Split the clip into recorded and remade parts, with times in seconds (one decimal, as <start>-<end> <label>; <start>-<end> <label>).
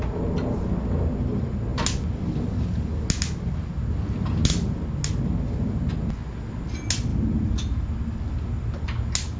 0.0-9.4 recorded